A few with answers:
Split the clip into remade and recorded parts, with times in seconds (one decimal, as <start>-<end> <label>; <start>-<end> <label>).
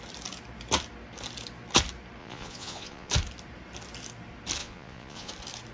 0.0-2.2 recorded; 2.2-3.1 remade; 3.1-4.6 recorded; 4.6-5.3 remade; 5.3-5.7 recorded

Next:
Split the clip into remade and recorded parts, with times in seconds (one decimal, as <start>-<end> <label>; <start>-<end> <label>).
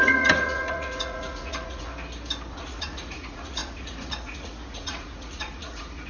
0.0-1.9 remade; 1.9-2.5 recorded; 2.5-6.1 remade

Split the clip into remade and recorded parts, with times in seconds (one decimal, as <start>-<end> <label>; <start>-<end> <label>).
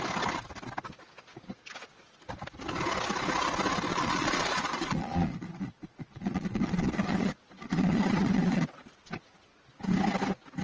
0.0-3.9 recorded; 3.9-9.1 remade; 9.1-10.6 recorded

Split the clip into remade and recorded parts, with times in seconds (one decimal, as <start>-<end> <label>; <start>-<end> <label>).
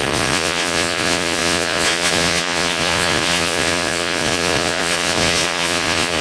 0.0-6.2 remade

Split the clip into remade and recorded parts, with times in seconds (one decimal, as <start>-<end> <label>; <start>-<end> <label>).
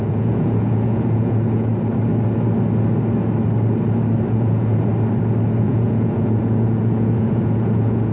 0.0-1.7 remade; 1.7-4.3 recorded; 4.3-4.9 remade; 4.9-5.6 recorded; 5.6-8.1 remade